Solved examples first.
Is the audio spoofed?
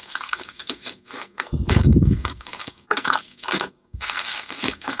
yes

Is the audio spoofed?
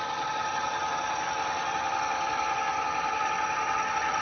no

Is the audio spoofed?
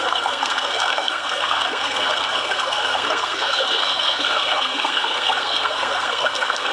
yes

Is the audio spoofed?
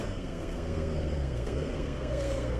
yes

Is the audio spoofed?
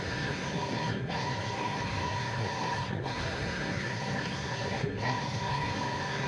yes